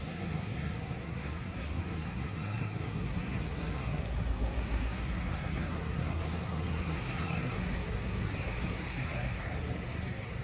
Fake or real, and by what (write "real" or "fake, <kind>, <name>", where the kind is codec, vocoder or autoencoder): fake, codec, SNAC